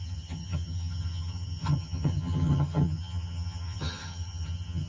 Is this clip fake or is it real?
fake